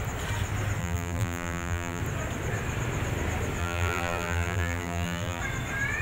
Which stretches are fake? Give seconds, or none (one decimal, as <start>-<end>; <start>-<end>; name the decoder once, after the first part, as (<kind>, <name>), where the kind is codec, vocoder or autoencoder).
0.8-2.0 (vocoder, BigVGAN v2); 3.6-5.4